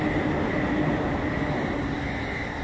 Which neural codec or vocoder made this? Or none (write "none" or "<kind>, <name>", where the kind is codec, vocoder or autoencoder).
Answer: none